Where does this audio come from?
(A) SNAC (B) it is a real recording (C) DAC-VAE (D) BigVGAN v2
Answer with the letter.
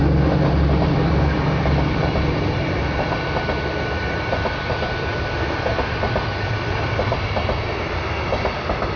B